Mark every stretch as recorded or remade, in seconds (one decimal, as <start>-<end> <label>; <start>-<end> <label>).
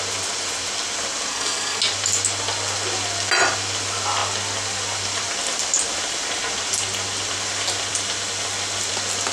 0.0-1.3 recorded; 1.3-1.8 remade; 1.8-9.3 recorded